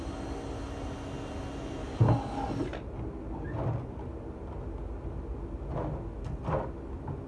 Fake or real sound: real